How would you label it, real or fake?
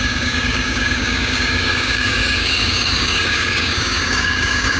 fake